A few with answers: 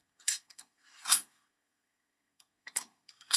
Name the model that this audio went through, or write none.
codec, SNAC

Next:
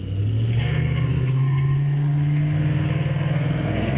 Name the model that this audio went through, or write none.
codec, SNAC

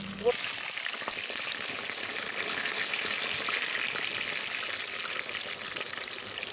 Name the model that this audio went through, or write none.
none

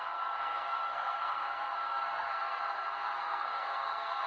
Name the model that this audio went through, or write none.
codec, SNAC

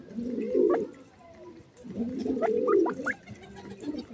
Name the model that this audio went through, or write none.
none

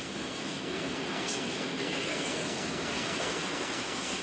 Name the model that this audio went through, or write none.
codec, SNAC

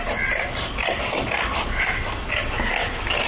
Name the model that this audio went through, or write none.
none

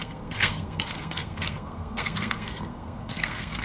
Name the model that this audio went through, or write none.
codec, SNAC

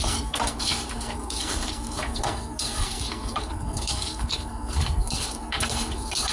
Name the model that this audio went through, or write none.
codec, SNAC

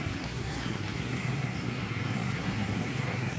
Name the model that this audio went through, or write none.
codec, SNAC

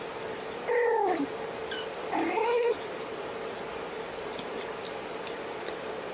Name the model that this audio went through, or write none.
none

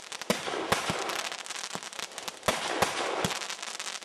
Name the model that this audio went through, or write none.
none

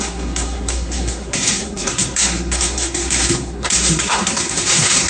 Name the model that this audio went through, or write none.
codec, SNAC